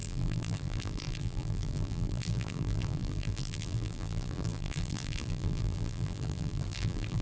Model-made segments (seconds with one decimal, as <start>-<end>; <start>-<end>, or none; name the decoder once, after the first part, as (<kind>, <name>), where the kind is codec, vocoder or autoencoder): 0.0-7.2 (vocoder, BigVGAN v2)